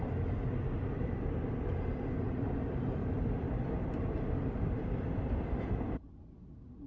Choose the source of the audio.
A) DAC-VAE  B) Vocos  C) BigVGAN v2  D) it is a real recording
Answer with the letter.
D